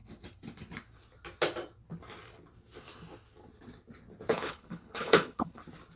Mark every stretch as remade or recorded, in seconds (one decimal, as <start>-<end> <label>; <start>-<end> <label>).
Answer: 0.0-4.3 recorded; 4.3-5.6 remade; 5.6-6.0 recorded